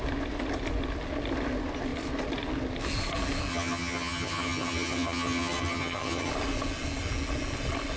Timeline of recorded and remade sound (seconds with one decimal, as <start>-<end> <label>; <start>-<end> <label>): 0.0-3.5 recorded; 3.5-6.3 remade; 6.3-8.0 recorded